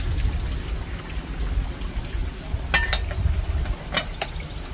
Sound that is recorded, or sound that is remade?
recorded